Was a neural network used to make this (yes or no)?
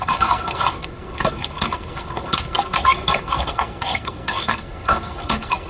yes